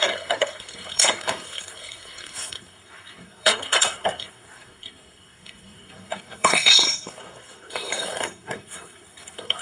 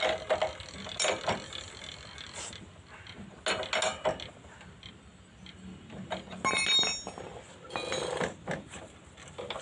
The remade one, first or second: first